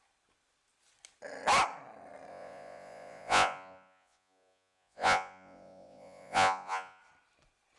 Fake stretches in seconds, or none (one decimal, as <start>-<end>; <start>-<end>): 2.3-7.0